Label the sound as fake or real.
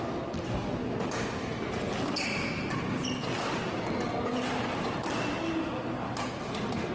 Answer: real